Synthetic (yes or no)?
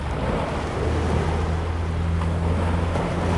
no